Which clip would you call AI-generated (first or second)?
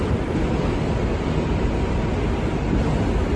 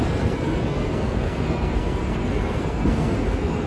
second